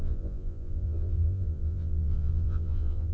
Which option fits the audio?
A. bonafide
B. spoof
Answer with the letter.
B